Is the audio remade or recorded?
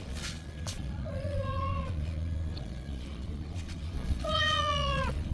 remade